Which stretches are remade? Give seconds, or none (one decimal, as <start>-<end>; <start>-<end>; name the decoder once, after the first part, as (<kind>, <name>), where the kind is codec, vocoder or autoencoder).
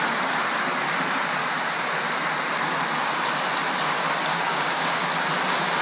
4.3-5.0 (codec, DAC)